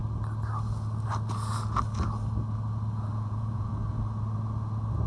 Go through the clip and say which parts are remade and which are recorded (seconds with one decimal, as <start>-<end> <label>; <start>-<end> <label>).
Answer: 0.0-3.1 recorded; 3.1-3.7 remade; 3.7-5.1 recorded

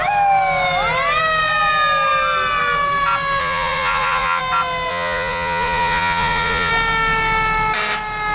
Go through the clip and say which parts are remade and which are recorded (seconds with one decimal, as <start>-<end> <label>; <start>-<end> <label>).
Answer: 0.0-3.4 recorded; 3.4-4.4 remade; 4.4-4.9 recorded; 4.9-6.7 remade; 6.7-8.3 recorded

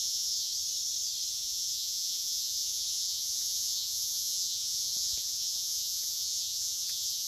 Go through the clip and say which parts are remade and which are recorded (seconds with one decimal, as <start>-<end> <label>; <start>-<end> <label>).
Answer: 0.0-0.5 remade; 0.5-1.3 recorded; 1.3-7.3 remade

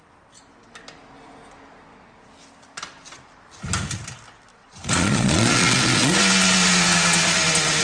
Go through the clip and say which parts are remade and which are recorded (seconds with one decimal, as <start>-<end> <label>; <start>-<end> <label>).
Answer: 0.0-4.6 recorded; 4.6-6.1 remade; 6.1-7.8 recorded

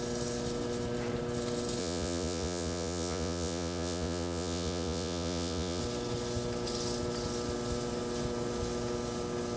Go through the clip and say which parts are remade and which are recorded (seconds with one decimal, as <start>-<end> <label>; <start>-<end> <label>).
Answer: 0.0-1.8 recorded; 1.8-5.8 remade; 5.8-9.6 recorded